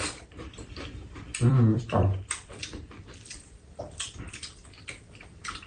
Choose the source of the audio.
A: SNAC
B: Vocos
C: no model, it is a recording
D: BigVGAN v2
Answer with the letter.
D